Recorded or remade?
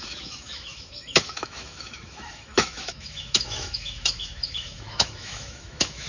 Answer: remade